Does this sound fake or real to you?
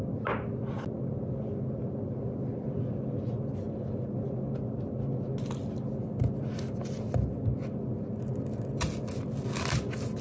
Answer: real